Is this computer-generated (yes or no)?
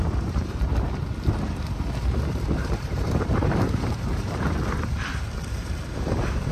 yes